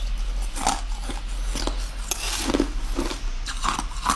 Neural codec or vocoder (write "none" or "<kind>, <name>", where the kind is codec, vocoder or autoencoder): none